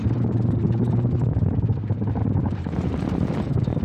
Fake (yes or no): yes